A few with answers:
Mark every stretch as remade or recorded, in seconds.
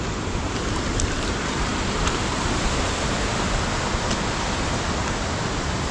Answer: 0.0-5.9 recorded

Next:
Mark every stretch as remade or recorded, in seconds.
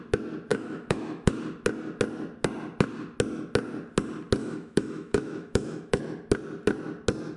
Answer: 0.0-0.5 recorded; 0.5-1.3 remade; 1.3-4.4 recorded; 4.4-6.0 remade; 6.0-7.4 recorded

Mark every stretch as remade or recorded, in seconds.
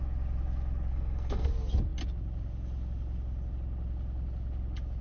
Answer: 0.0-0.9 recorded; 0.9-1.5 remade; 1.5-5.0 recorded